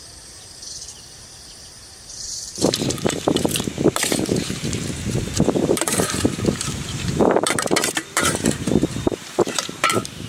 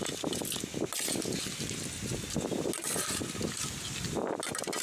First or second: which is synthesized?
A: first